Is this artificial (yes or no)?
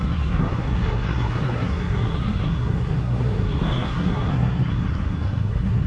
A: yes